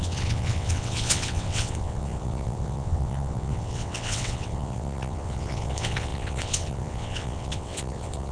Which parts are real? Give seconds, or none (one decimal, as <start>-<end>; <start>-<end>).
none